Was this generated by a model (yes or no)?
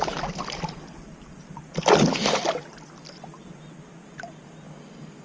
no